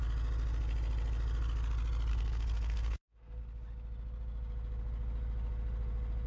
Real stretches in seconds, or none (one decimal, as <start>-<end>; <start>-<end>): 0.0-2.1; 3.4-6.3